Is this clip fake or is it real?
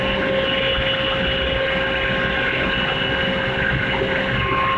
real